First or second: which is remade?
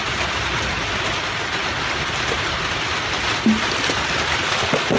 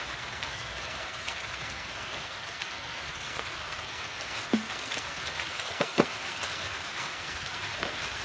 second